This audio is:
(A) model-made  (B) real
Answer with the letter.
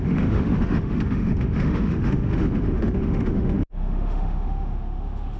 A